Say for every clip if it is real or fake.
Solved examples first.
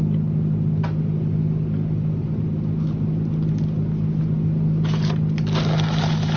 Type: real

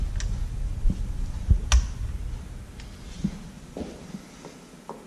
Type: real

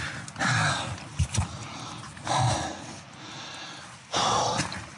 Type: real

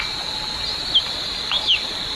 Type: real